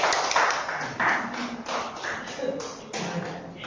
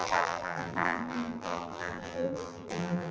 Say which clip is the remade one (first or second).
second